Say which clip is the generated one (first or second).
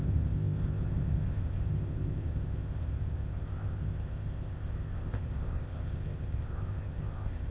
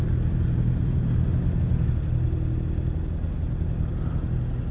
first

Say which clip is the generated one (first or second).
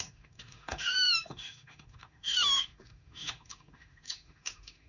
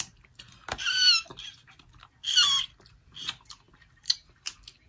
first